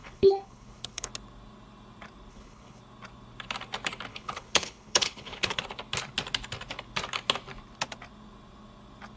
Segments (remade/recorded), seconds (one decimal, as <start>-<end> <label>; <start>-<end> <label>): 0.0-1.1 remade; 1.1-2.3 recorded; 2.3-2.8 remade; 2.8-4.1 recorded; 4.1-5.6 remade; 5.6-9.2 recorded